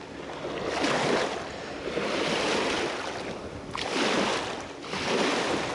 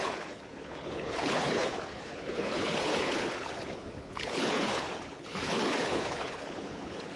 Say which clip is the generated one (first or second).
second